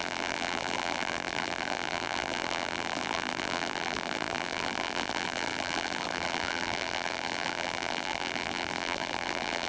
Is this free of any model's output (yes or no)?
no